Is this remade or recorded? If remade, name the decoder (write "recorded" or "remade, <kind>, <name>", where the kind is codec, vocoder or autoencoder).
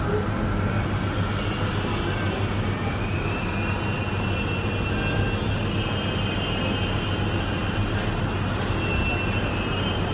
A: recorded